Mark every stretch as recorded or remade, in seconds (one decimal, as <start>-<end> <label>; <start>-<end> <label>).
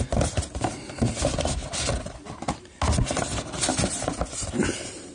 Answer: 0.0-5.1 recorded